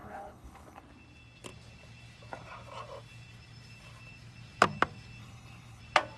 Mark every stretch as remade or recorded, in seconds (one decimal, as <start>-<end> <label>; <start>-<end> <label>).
0.0-0.8 remade; 0.8-5.2 recorded; 5.2-5.8 remade; 5.8-6.2 recorded